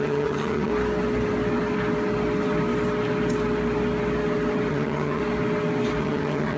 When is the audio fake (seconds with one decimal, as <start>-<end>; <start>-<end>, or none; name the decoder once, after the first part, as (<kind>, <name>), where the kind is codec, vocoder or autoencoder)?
0.0-0.7 (vocoder, HiFi-GAN); 4.7-5.2; 6.0-6.6